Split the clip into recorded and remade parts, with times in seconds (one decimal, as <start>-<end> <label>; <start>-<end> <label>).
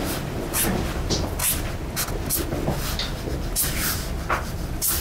0.0-1.4 remade; 1.4-4.3 recorded; 4.3-5.0 remade